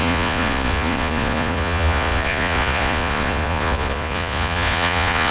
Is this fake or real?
fake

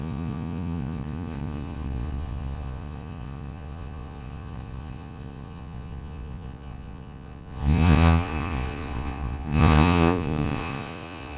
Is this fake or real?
fake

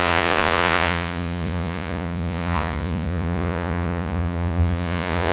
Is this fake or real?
fake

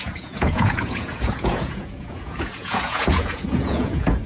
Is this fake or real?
fake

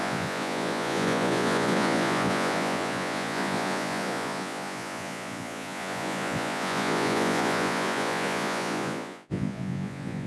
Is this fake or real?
fake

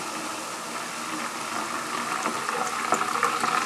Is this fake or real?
real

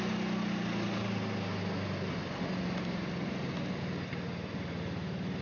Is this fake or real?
real